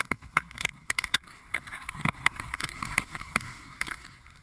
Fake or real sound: fake